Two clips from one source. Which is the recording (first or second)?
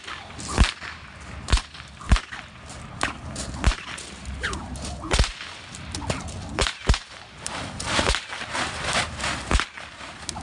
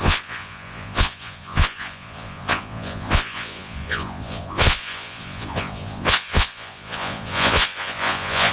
first